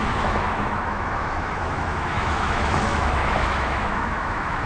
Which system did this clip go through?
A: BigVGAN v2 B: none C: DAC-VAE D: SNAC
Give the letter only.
C